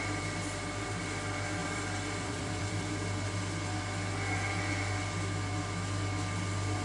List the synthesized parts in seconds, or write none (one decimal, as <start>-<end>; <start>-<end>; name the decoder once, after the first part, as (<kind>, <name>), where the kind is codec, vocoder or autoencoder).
1.6-2.9 (vocoder, BigVGAN v2)

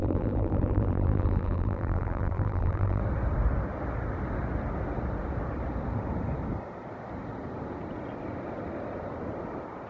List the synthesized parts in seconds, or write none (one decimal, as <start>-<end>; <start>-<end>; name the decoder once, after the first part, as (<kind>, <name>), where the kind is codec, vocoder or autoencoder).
0.0-3.0 (vocoder, BigVGAN v2)

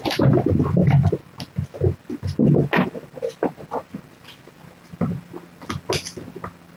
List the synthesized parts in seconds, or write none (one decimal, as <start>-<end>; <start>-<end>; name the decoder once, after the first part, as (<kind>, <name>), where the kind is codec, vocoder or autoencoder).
none

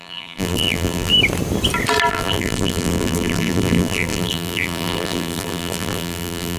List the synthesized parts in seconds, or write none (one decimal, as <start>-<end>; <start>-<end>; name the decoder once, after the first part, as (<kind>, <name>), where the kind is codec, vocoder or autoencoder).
0.0-1.1 (vocoder, BigVGAN v2); 2.1-6.6